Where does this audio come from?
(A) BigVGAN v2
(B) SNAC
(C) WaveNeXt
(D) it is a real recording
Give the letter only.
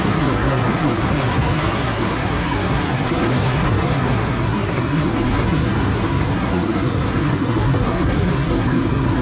B